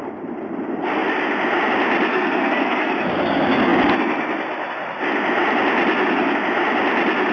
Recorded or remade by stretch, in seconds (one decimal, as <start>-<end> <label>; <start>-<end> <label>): 0.0-2.1 recorded; 2.1-2.9 remade; 2.9-7.3 recorded